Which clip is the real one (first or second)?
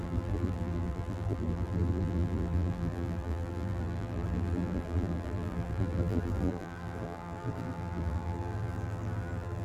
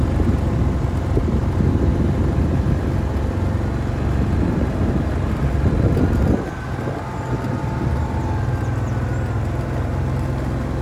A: second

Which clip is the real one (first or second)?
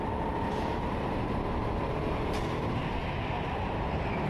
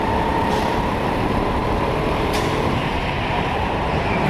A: first